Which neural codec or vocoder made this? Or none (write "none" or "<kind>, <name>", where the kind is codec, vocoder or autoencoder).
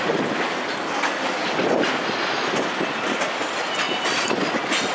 none